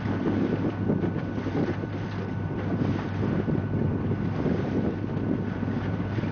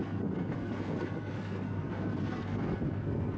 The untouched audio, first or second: first